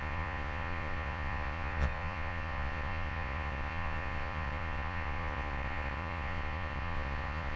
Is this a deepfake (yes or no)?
yes